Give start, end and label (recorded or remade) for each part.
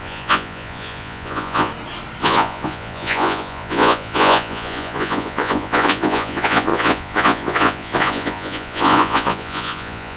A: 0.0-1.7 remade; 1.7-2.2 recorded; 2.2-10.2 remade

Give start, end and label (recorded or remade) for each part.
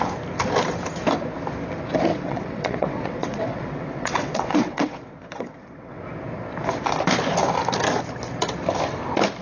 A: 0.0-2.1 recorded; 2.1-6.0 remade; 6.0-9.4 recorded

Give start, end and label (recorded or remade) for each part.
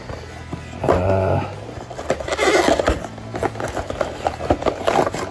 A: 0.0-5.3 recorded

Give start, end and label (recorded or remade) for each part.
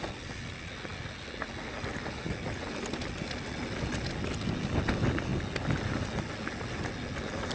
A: 0.0-7.5 recorded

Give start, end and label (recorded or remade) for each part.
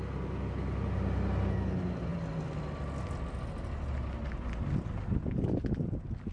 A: 0.0-6.3 recorded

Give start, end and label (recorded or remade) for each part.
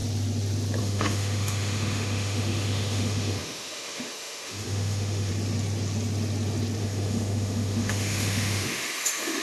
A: 0.0-0.8 recorded; 0.8-5.3 remade; 5.3-6.8 recorded; 6.8-9.4 remade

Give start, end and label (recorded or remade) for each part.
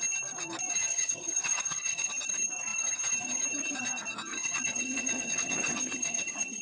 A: 0.0-0.9 recorded; 0.9-2.1 remade; 2.1-4.3 recorded; 4.3-6.6 remade